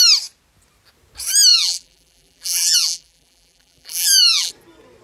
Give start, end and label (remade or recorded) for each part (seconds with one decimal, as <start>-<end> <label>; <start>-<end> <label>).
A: 0.0-1.5 recorded; 1.5-4.5 remade; 4.5-5.0 recorded